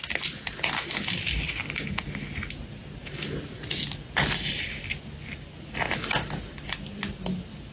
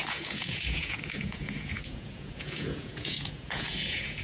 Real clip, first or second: first